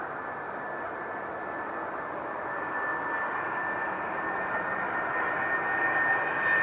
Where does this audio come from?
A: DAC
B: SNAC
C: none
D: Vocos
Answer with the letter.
C